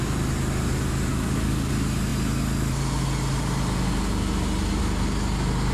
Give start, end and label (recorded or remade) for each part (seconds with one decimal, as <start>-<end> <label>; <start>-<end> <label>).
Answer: 0.0-1.1 recorded; 1.1-1.7 remade; 1.7-5.7 recorded